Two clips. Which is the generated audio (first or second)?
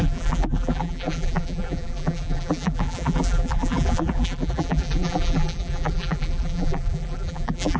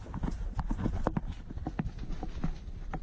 first